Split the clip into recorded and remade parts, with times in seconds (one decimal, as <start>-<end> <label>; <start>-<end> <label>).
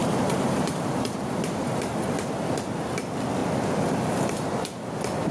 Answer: 0.0-2.0 remade; 2.0-5.3 recorded